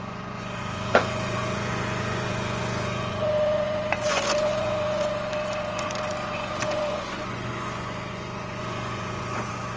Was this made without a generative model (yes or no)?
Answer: no